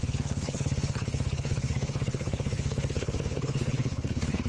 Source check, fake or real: fake